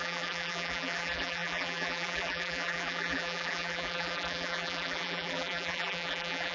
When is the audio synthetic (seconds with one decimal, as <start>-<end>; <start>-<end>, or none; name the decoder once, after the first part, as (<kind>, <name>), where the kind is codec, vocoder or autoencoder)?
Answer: 0.0-6.5 (vocoder, BigVGAN v2)